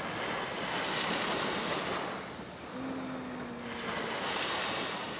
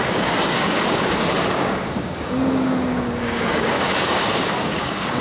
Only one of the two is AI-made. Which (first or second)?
second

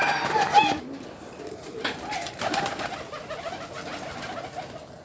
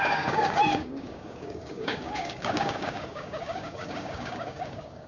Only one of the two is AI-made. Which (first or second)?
second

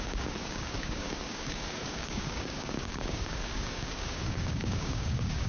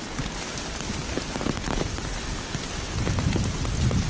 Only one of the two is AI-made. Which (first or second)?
first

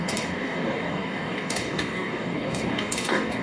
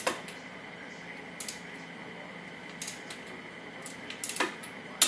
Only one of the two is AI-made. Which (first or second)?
first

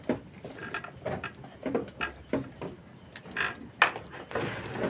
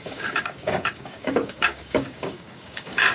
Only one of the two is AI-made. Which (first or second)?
second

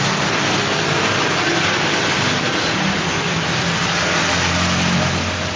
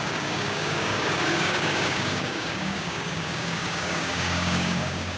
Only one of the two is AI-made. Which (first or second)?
second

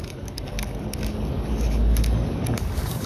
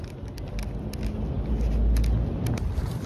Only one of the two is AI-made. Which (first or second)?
first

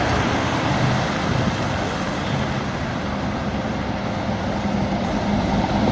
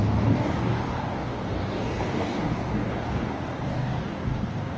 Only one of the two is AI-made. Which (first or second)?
second